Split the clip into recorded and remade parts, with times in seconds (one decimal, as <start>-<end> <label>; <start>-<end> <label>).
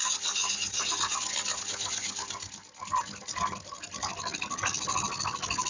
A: 0.0-5.7 recorded